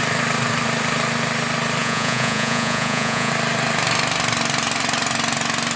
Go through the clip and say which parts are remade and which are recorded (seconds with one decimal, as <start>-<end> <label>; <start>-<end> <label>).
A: 0.0-1.8 recorded; 1.8-3.3 remade; 3.3-5.8 recorded